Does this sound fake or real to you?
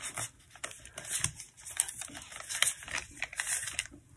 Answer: real